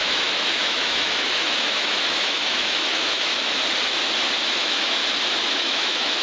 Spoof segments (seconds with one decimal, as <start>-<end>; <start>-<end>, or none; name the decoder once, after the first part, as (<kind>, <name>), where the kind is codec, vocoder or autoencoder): 0.0-3.3 (autoencoder, DAC-VAE); 4.6-5.0; 5.5-6.2

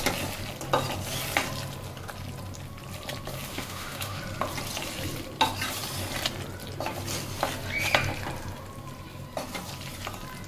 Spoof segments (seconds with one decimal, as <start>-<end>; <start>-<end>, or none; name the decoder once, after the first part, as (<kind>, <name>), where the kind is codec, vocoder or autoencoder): 3.5-4.2 (autoencoder, DAC-VAE)